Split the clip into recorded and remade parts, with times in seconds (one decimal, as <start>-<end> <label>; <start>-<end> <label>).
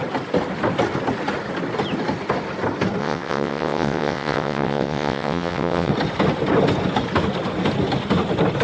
0.0-3.0 recorded; 3.0-5.9 remade; 5.9-8.6 recorded